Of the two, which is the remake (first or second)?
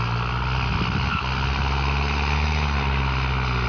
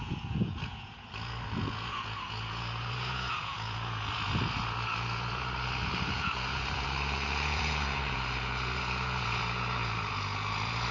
second